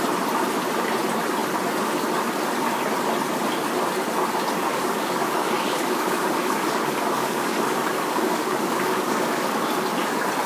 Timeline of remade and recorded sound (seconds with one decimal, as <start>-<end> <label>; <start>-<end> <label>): 0.0-4.7 recorded; 4.7-9.6 remade; 9.6-10.5 recorded